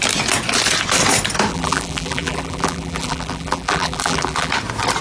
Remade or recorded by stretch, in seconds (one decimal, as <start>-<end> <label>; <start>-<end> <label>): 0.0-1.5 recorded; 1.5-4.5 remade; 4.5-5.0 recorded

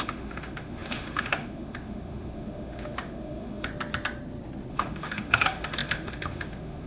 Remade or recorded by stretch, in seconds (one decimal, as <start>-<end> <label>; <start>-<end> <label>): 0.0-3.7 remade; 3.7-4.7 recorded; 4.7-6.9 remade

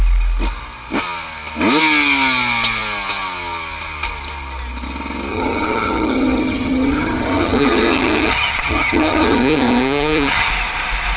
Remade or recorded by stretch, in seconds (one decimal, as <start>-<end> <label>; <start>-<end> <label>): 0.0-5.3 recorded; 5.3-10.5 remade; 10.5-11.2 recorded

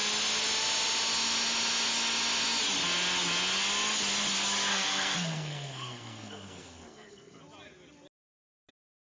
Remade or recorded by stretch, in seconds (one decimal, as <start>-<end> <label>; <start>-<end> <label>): 0.0-4.7 recorded; 4.7-7.4 remade; 7.4-9.0 recorded

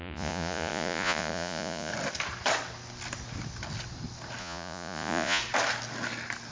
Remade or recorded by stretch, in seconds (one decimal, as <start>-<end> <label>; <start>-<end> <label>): 0.0-1.9 remade; 1.9-4.4 recorded; 4.4-5.4 remade; 5.4-6.5 recorded

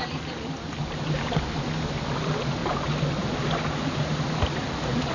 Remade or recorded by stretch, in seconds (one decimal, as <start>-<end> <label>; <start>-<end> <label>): 0.0-5.1 recorded

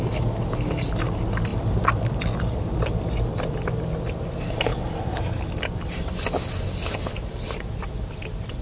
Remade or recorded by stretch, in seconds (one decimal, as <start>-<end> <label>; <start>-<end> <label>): 0.0-1.5 recorded; 1.5-3.7 remade; 3.7-8.6 recorded

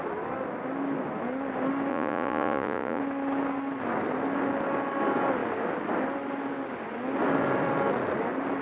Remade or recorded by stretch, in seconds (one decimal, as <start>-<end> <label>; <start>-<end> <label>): 0.0-1.9 recorded; 1.9-3.0 remade; 3.0-8.6 recorded